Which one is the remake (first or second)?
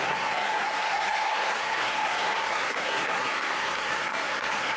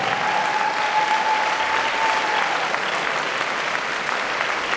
first